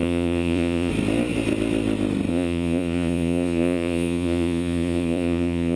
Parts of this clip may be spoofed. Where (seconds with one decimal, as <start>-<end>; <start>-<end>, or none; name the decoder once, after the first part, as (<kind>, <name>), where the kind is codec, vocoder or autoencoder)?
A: 0.0-0.9 (vocoder, Vocos); 2.3-5.8